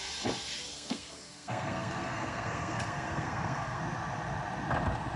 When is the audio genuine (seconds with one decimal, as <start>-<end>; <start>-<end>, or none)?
0.0-0.7; 3.8-5.2

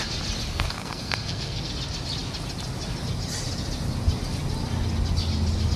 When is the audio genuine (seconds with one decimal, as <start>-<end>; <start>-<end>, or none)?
0.0-0.5; 1.7-5.8

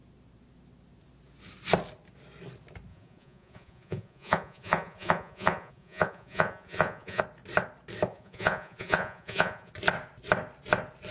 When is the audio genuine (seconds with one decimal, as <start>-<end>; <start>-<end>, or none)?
0.0-2.9; 7.2-8.1; 9.7-11.1

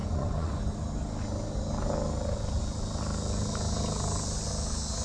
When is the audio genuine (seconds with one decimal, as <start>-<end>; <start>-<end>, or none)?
0.6-5.0

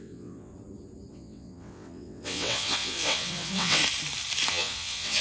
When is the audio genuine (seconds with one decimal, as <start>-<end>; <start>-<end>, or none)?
0.5-1.1; 3.8-4.5